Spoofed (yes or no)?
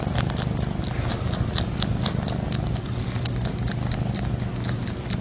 no